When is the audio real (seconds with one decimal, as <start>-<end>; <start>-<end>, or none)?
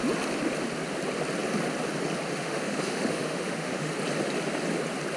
0.0-2.3; 3.9-5.2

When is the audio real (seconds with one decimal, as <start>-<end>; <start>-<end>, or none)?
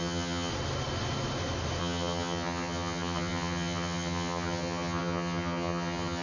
0.5-1.8